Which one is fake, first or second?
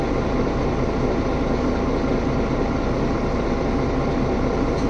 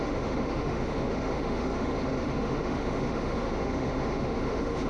second